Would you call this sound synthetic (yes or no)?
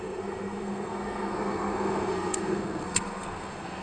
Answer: yes